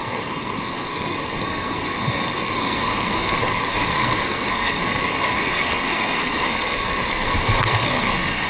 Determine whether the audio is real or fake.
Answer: fake